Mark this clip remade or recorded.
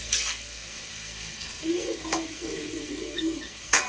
remade